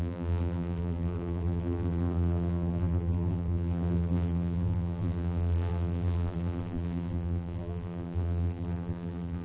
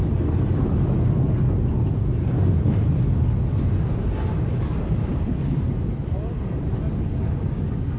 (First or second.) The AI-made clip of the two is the first